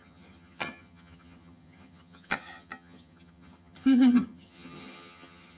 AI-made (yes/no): yes